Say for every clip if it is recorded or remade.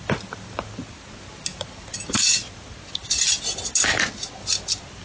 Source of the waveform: recorded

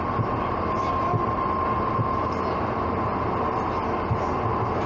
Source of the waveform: recorded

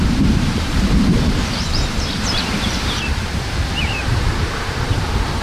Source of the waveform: remade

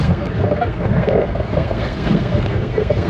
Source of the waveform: remade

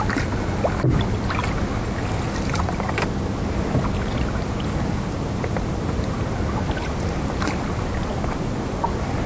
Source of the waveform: recorded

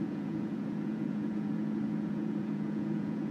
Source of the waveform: remade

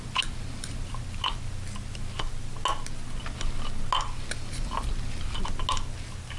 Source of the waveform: recorded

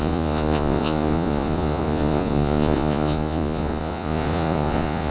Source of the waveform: remade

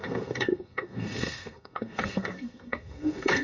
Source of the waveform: remade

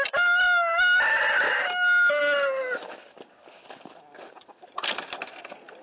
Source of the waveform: recorded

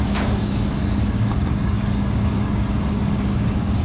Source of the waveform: remade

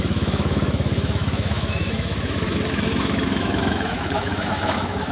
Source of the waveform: remade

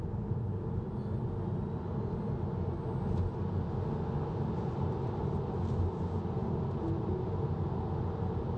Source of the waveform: recorded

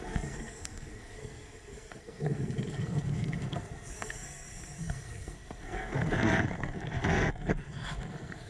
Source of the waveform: remade